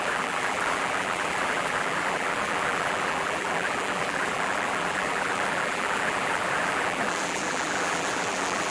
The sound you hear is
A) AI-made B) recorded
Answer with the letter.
A